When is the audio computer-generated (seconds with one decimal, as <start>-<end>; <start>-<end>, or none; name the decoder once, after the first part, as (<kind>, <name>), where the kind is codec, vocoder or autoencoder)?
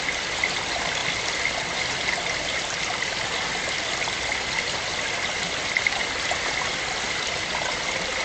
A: none